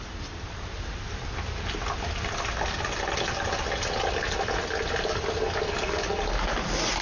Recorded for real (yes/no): yes